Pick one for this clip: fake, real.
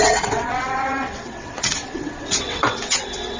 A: fake